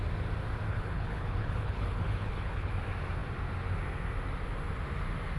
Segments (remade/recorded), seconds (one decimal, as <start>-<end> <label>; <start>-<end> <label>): 0.0-0.7 recorded; 0.7-2.7 remade; 2.7-5.4 recorded